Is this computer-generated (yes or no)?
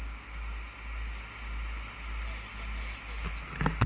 no